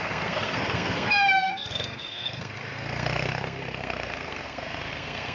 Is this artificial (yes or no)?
yes